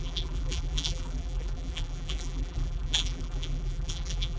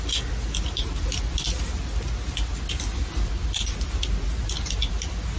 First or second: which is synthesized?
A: first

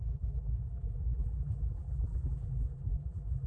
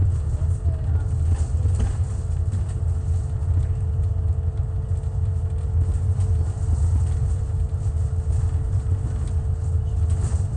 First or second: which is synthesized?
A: first